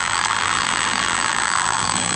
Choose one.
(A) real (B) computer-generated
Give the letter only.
B